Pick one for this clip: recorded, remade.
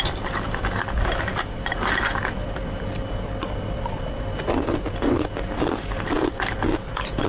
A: recorded